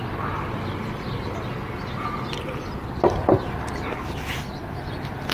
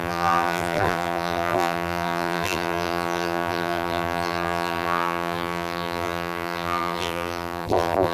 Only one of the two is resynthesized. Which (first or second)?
second